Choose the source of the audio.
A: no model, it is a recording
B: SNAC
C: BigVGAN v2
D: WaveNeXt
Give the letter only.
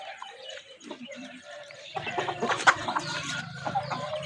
C